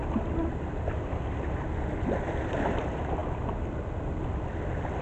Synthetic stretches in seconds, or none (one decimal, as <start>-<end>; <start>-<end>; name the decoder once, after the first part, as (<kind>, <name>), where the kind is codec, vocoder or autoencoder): none